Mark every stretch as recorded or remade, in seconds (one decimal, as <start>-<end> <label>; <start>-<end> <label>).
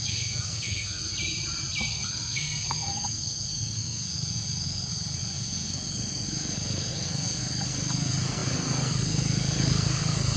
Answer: 0.0-1.1 remade; 1.1-1.9 recorded; 1.9-10.4 remade